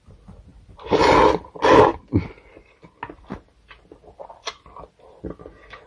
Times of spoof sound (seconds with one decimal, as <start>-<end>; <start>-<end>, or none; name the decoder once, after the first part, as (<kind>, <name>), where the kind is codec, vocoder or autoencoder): none